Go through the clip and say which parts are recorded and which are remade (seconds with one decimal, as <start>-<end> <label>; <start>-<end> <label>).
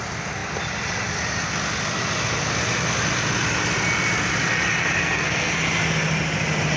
0.0-5.0 recorded; 5.0-5.5 remade; 5.5-6.8 recorded